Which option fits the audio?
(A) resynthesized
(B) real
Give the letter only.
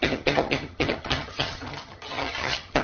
A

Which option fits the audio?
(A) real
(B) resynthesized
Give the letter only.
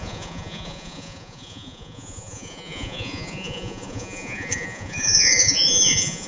B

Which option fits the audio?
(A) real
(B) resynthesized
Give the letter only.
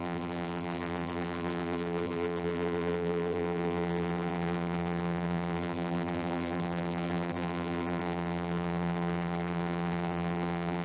B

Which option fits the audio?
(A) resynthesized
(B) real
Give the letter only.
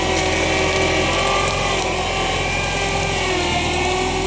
B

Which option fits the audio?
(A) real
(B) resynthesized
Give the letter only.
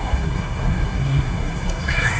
B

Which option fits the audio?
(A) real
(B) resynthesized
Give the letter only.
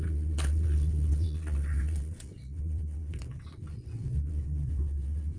B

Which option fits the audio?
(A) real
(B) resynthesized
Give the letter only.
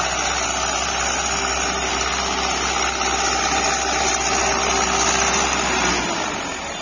A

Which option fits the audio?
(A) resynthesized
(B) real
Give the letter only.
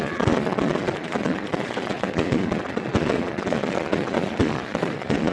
A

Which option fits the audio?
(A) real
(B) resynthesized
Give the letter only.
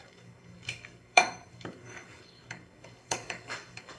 B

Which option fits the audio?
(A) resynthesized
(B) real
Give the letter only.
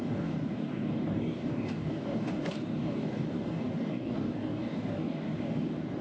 A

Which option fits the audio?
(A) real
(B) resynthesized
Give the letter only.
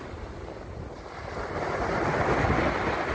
A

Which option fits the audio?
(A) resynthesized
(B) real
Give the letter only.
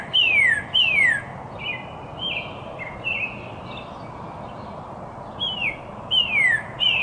B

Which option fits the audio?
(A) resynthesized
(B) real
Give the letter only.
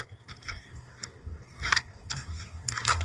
A